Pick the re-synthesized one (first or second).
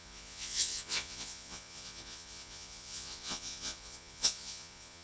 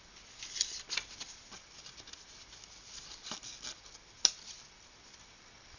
first